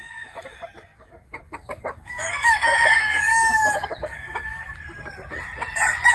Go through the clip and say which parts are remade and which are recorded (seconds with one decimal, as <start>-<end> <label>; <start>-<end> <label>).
0.0-4.6 remade; 4.6-6.1 recorded